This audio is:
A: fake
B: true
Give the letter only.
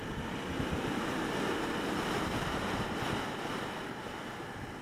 B